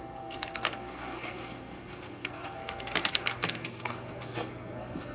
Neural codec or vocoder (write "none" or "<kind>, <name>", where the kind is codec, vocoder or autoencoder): codec, SNAC